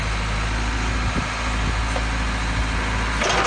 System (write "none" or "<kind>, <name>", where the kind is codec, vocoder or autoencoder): none